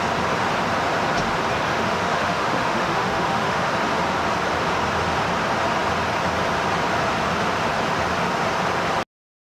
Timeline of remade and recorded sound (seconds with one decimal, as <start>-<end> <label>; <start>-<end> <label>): 0.0-1.7 recorded; 1.7-3.7 remade; 3.7-9.5 recorded